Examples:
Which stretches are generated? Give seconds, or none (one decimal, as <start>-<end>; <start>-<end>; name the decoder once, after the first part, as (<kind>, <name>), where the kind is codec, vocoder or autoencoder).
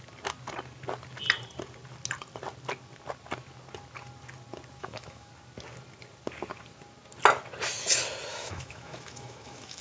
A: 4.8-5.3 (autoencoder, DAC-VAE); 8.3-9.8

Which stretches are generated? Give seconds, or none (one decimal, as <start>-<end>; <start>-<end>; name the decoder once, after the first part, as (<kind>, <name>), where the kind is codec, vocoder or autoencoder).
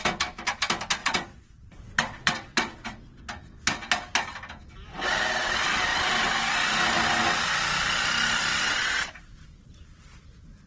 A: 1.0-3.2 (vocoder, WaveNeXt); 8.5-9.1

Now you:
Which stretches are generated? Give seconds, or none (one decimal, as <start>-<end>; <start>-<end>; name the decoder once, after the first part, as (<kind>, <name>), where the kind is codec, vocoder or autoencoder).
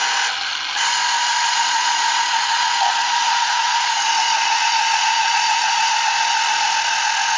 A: 1.5-5.9 (vocoder, Vocos)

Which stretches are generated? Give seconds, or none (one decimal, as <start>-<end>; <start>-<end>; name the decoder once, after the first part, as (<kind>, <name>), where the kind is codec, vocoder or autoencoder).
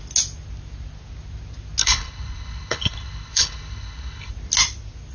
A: 1.8-4.3 (codec, HILCodec)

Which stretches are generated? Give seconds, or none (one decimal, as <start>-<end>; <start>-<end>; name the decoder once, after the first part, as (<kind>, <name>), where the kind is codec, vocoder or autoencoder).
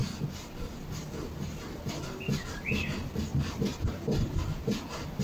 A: 3.3-4.6 (vocoder, BigVGAN v2)